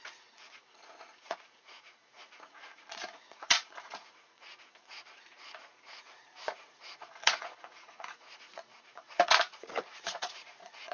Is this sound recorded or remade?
remade